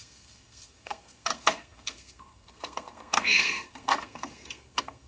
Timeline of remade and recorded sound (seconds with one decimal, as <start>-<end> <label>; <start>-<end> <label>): 0.0-5.1 remade